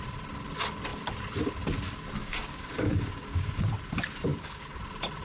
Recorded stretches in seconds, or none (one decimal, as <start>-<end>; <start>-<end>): 0.0-2.2; 3.7-4.3; 4.8-5.2